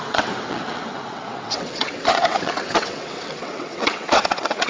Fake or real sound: fake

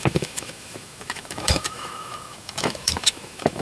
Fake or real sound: fake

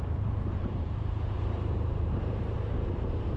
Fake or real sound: fake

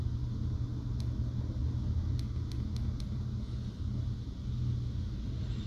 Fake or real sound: real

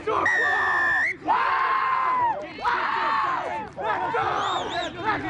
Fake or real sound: real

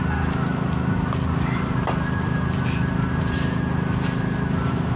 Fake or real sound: fake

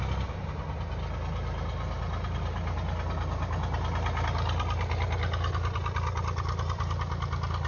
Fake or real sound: real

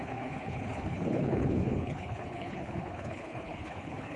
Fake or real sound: fake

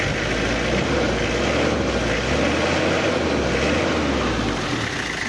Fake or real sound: real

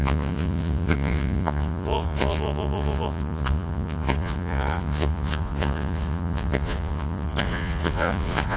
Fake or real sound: fake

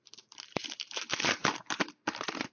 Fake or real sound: fake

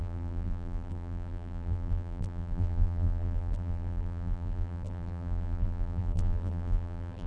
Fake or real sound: fake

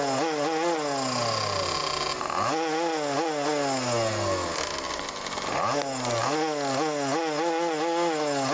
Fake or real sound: real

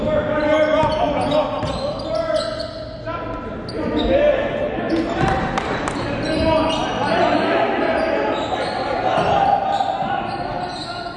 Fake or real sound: real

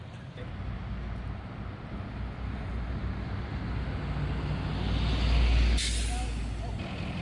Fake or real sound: real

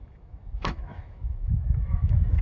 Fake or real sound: fake